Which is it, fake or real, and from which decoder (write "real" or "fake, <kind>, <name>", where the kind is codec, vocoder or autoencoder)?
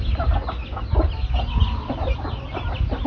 real